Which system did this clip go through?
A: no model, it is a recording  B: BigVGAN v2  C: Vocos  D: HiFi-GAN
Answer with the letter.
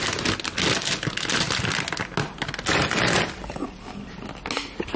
A